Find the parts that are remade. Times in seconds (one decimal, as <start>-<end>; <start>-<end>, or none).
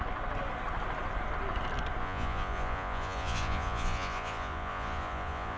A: 2.0-5.6